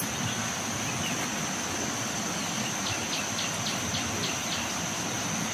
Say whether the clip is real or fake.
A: real